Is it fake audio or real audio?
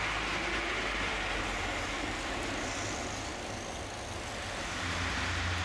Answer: real